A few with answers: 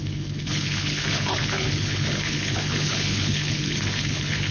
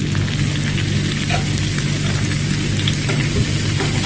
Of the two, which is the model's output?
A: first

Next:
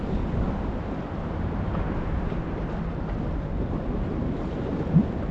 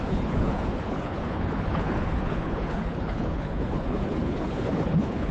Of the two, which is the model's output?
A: second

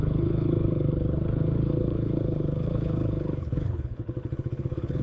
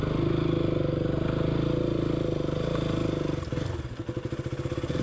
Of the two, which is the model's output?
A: first